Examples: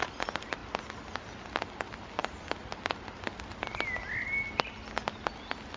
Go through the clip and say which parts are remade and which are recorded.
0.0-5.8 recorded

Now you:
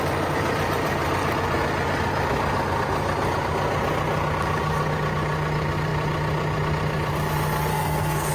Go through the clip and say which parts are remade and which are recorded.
0.0-7.7 recorded; 7.7-8.3 remade

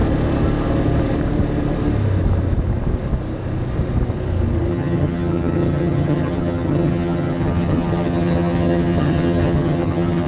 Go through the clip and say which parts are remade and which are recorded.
0.0-4.7 recorded; 4.7-10.3 remade

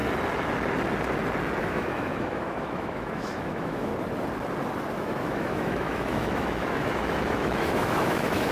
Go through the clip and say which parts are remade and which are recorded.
0.0-1.6 recorded; 1.6-3.9 remade; 3.9-5.0 recorded; 5.0-8.5 remade

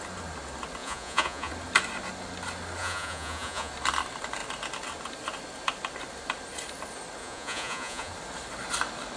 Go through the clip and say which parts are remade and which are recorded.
0.0-0.8 recorded; 0.8-1.5 remade; 1.5-2.8 recorded; 2.8-3.7 remade; 3.7-7.2 recorded; 7.2-8.1 remade; 8.1-9.2 recorded

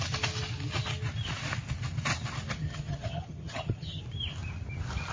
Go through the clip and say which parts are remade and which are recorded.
0.0-2.6 recorded; 2.6-4.0 remade; 4.0-5.1 recorded

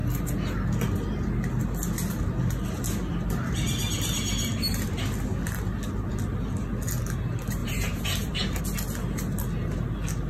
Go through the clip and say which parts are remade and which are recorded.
0.0-7.6 recorded; 7.6-8.6 remade; 8.6-10.3 recorded

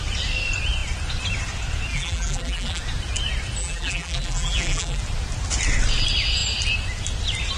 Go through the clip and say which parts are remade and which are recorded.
0.0-1.9 recorded; 1.9-2.8 remade; 2.8-3.6 recorded; 3.6-5.0 remade; 5.0-7.6 recorded